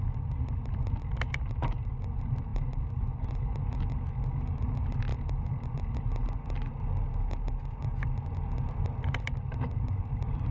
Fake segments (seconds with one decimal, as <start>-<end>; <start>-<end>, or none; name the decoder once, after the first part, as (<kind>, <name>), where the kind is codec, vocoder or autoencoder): 2.5-3.4 (vocoder, BigVGAN v2); 5.1-5.7; 7.9-10.5